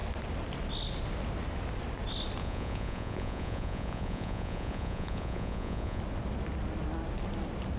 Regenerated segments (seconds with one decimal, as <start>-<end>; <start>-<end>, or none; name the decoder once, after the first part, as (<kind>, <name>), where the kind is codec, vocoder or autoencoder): 2.4-6.0 (vocoder, Vocos)